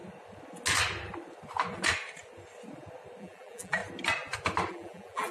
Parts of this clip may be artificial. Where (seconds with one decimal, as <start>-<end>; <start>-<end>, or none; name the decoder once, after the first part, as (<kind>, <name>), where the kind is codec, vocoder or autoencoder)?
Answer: 3.2-3.8 (vocoder, BigVGAN v2); 4.7-5.3